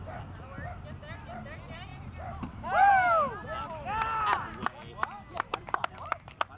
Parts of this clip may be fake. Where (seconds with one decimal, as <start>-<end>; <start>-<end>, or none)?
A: 1.9-2.9; 5.3-6.1